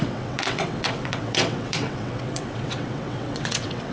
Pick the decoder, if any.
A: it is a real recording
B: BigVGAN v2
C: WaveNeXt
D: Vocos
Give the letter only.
C